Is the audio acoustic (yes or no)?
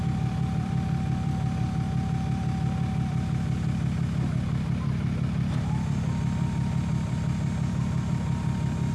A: no